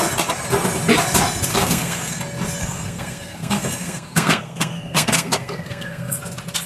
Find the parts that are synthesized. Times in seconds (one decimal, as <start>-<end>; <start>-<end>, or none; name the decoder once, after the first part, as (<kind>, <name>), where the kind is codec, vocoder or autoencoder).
1.5-2.2 (codec, SNAC); 2.6-6.2